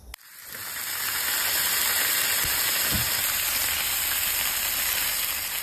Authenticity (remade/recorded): recorded